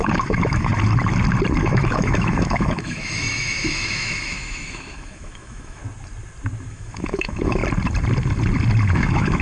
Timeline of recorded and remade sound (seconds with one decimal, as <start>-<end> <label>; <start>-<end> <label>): 0.0-0.7 remade; 0.7-1.6 recorded; 1.6-5.8 remade; 5.8-6.7 recorded; 6.7-7.6 remade; 7.6-8.9 recorded; 8.9-9.4 remade